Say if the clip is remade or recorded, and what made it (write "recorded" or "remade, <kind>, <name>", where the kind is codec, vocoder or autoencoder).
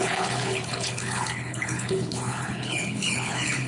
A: remade, codec, HILCodec